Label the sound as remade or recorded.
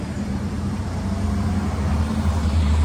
remade